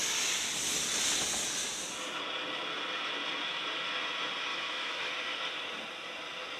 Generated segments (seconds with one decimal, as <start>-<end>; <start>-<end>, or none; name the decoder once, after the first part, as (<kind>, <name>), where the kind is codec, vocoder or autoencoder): 4.5-5.1 (autoencoder, DAC-VAE)